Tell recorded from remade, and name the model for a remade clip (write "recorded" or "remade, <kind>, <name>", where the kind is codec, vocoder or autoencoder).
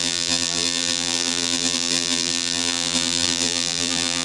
remade, vocoder, BigVGAN v2